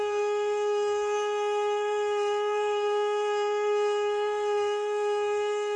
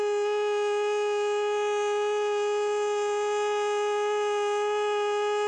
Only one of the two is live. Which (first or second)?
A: second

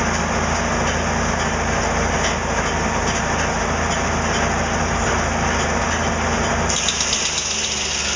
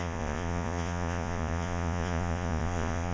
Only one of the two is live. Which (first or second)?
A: first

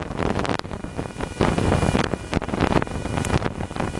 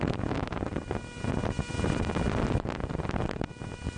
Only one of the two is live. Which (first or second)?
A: second